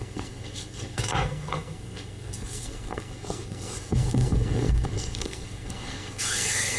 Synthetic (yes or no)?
yes